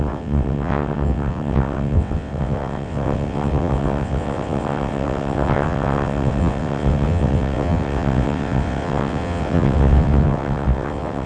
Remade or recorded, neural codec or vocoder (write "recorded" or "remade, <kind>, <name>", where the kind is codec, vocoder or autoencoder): remade, vocoder, WaveNeXt